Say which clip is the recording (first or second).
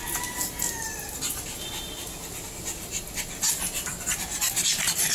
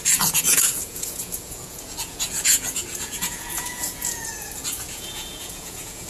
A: first